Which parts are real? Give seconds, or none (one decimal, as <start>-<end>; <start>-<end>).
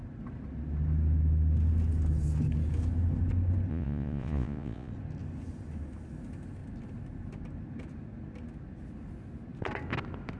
0.0-3.7; 4.9-10.4